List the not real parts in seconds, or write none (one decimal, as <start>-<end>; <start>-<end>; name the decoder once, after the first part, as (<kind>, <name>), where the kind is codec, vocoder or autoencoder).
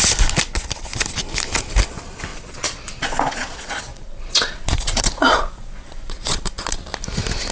2.3-6.8 (vocoder, Vocos)